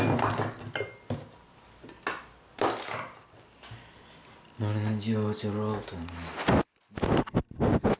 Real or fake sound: real